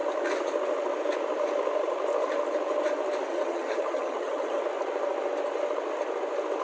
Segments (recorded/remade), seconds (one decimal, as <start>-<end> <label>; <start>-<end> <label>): 0.0-3.3 recorded; 3.3-4.6 remade; 4.6-6.6 recorded